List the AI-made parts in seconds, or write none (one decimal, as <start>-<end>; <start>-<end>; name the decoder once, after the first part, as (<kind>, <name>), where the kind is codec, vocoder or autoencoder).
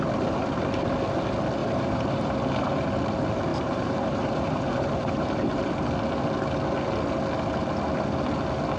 1.6-2.9 (vocoder, BigVGAN v2); 3.5-5.7